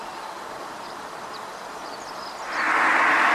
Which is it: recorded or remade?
recorded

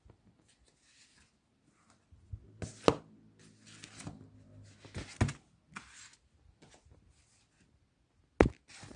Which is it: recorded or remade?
recorded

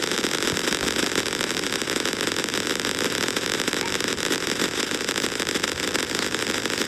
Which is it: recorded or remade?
recorded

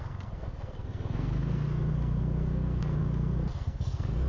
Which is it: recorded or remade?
remade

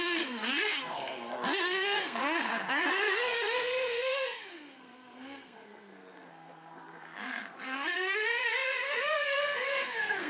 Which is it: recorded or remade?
remade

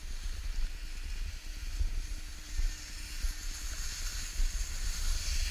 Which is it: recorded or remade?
recorded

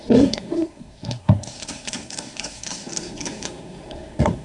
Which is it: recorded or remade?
remade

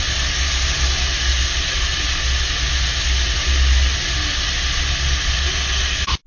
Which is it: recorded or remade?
recorded